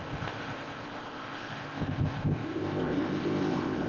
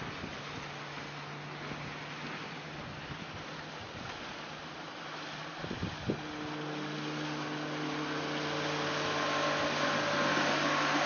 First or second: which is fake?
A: first